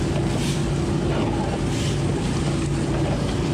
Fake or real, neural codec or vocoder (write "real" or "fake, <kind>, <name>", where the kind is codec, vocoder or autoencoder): real